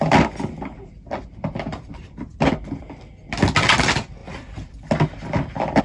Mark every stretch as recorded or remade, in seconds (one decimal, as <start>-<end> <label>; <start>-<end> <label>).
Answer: 0.0-5.8 recorded

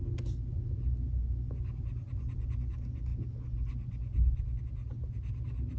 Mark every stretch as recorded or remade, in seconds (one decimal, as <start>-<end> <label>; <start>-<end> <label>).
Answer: 0.0-5.8 recorded

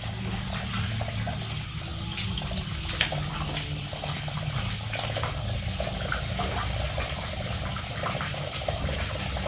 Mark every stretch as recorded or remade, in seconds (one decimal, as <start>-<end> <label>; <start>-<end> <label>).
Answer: 0.0-9.5 recorded

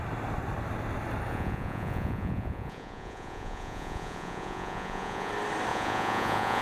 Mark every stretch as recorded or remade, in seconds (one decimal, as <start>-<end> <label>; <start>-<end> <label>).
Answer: 0.0-1.3 recorded; 1.3-5.3 remade; 5.3-5.7 recorded; 5.7-6.6 remade

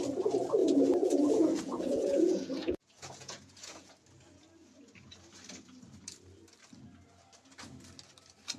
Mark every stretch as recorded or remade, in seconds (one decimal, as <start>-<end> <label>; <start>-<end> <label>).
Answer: 0.0-0.6 recorded; 0.6-3.9 remade; 3.9-8.6 recorded

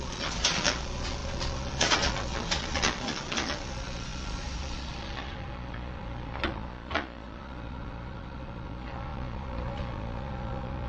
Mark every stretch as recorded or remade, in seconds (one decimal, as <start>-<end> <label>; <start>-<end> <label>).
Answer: 0.0-10.9 remade

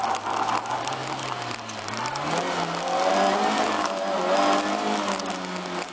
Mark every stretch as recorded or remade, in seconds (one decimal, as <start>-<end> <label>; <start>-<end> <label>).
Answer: 0.0-5.9 recorded

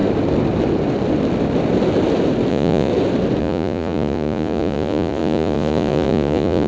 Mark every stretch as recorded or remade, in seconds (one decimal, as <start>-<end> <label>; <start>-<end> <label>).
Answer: 0.0-2.5 recorded; 2.5-2.9 remade; 2.9-3.4 recorded; 3.4-6.7 remade